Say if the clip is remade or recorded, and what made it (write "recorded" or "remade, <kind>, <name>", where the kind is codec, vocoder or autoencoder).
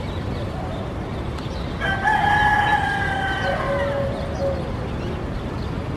recorded